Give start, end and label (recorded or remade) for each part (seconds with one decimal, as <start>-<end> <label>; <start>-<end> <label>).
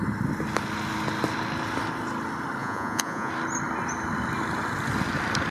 0.0-2.6 recorded; 2.6-3.3 remade; 3.3-5.5 recorded